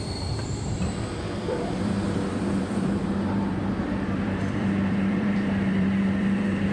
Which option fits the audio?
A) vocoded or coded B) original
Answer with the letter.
A